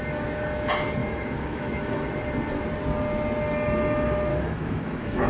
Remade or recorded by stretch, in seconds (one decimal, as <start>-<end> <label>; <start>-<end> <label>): 0.0-1.0 recorded; 1.0-2.1 remade; 2.1-4.3 recorded; 4.3-5.3 remade